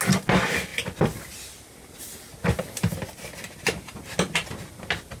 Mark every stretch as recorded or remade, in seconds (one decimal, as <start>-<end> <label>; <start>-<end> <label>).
0.0-5.2 recorded